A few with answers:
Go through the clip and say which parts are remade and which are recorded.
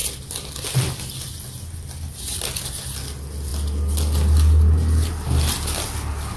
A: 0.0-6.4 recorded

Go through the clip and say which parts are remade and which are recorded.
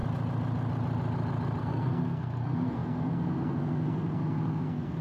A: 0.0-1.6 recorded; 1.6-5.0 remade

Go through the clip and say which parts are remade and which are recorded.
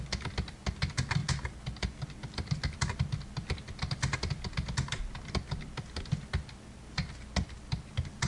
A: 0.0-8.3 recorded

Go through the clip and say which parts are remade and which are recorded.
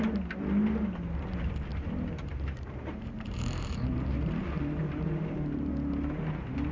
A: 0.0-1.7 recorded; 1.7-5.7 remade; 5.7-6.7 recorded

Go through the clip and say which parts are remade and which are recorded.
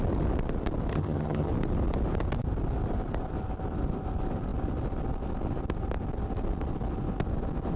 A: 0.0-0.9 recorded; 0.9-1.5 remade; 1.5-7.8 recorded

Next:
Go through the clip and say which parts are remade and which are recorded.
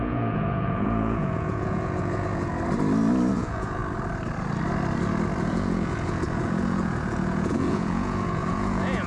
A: 0.0-2.5 remade; 2.5-3.3 recorded; 3.3-3.8 remade; 3.8-5.4 recorded; 5.4-9.1 remade